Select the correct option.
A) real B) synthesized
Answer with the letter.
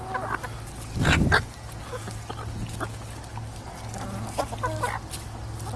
A